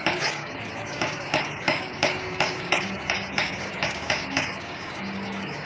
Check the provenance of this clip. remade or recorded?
remade